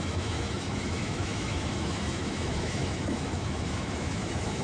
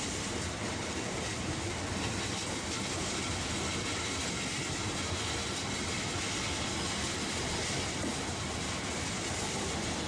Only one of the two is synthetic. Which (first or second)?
first